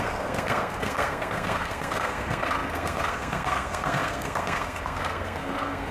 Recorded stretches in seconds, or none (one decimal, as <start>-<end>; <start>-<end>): none